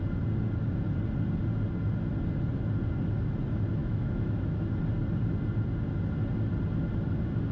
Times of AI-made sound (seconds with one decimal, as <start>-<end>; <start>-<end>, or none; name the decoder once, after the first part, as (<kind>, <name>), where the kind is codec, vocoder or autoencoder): 3.8-4.7 (autoencoder, DAC-VAE)